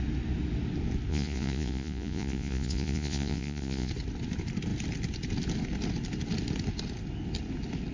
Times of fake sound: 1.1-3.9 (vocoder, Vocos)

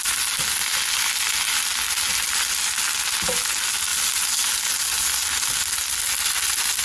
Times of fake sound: none

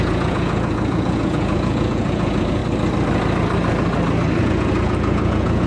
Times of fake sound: 0.0-2.6 (vocoder, Vocos); 4.4-5.7

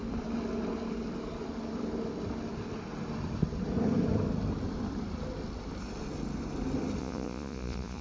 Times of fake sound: 7.0-8.0 (vocoder, Vocos)

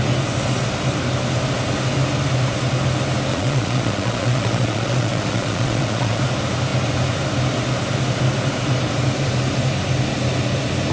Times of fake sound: 3.3-6.2 (vocoder, Vocos)